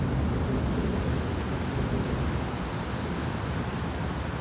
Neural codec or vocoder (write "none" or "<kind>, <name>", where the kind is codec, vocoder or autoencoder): none